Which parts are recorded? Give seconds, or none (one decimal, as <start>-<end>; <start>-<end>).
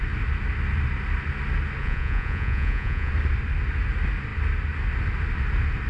0.0-1.8; 3.1-5.9